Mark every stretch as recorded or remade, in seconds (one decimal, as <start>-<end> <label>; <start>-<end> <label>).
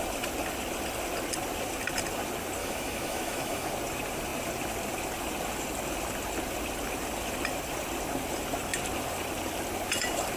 0.0-2.6 recorded; 2.6-3.7 remade; 3.7-10.4 recorded